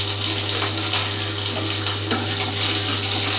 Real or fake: real